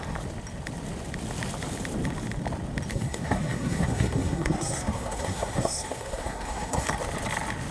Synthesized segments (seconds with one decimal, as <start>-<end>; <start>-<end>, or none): 2.9-6.9